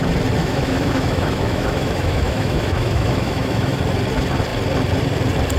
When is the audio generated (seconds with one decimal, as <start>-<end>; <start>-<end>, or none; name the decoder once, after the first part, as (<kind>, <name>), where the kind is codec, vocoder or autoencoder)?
0.4-3.8 (autoencoder, DAC-VAE)